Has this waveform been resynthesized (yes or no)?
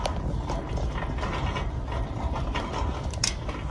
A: no